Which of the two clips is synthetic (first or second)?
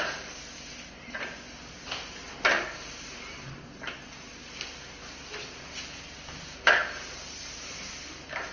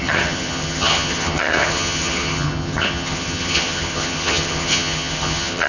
second